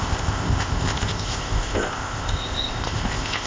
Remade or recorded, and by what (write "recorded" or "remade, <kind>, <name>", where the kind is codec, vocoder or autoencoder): remade, codec, ZipCodec